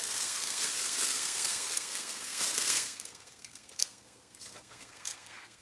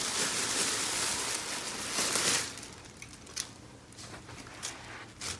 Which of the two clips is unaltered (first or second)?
second